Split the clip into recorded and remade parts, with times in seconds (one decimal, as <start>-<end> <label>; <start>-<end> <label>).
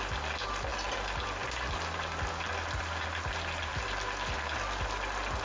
0.0-5.4 recorded